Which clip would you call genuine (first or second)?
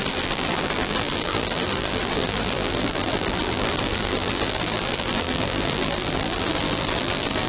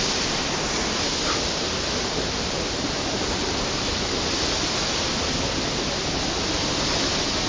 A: second